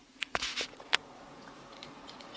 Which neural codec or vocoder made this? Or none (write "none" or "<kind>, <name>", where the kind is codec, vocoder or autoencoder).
vocoder, Vocos